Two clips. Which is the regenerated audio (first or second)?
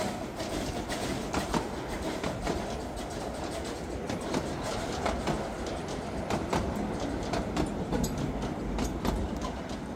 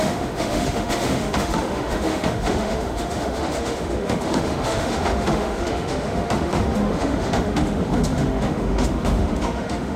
second